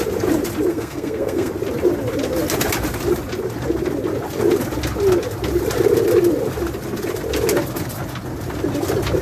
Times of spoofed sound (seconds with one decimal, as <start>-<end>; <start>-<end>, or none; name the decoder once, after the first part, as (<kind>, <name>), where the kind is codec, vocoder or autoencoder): 0.7-1.5 (codec, SNAC)